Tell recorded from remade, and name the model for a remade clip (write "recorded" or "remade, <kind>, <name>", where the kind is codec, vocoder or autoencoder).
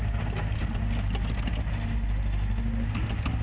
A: recorded